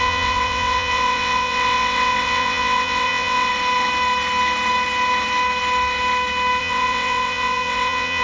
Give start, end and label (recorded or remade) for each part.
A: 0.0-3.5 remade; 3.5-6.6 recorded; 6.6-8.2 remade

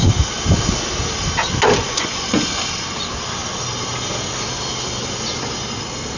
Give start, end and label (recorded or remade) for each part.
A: 0.0-1.8 recorded; 1.8-2.6 remade; 2.6-6.2 recorded

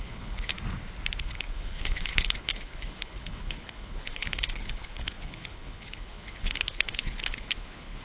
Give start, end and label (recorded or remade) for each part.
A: 0.0-0.5 remade; 0.5-1.2 recorded; 1.2-8.0 remade

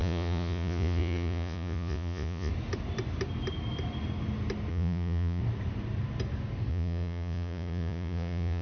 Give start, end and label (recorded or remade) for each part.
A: 0.0-2.5 remade; 2.5-4.7 recorded; 4.7-5.4 remade; 5.4-6.7 recorded; 6.7-8.6 remade